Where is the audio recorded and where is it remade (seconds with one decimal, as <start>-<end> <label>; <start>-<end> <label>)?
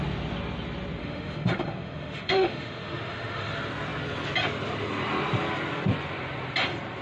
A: 0.0-1.0 recorded; 1.0-3.5 remade; 3.5-7.0 recorded